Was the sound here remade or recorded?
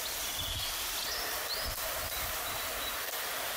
remade